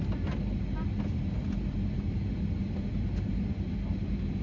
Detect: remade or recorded recorded